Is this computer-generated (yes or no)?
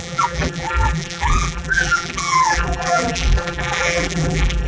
yes